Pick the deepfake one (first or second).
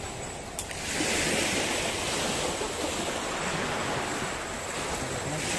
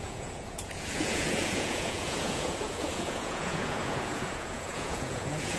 second